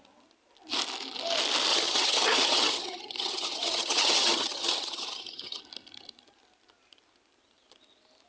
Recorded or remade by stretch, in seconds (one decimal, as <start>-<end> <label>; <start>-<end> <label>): 0.0-1.7 recorded; 1.7-5.6 remade; 5.6-8.3 recorded